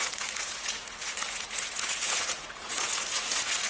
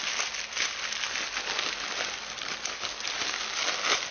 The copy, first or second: first